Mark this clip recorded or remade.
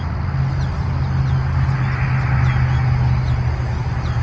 recorded